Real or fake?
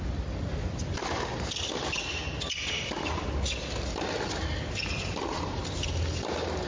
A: real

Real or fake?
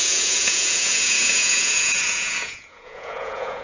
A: fake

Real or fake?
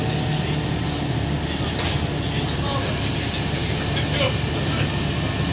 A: real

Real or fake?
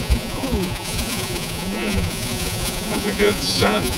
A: fake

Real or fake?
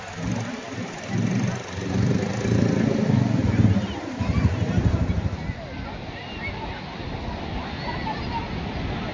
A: real